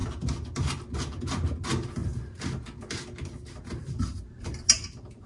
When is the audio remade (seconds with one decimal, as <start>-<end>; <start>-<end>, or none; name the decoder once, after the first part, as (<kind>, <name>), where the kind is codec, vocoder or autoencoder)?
none